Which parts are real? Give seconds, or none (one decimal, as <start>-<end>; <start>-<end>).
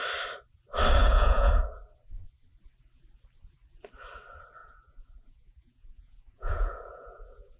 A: 0.0-1.0; 1.5-4.6